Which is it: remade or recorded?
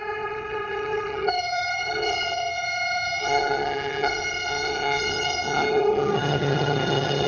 remade